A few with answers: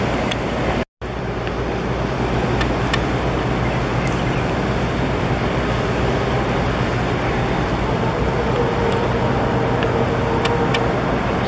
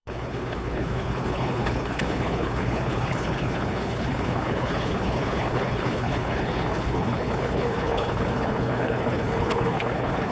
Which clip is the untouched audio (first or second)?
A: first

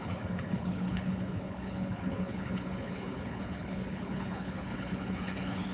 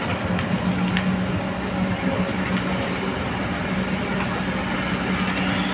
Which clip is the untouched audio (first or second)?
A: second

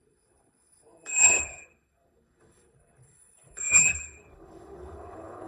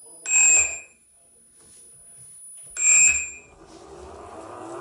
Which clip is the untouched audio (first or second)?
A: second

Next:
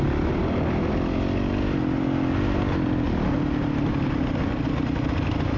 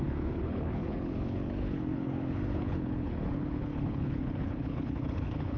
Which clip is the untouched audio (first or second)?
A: first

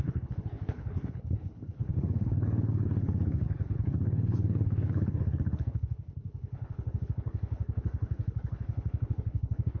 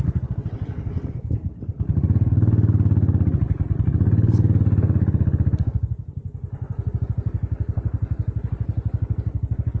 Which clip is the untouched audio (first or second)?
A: second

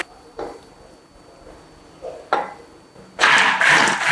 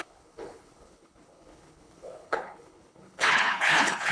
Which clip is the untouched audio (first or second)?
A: first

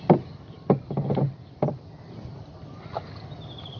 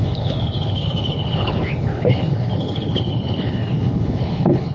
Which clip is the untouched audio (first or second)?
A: first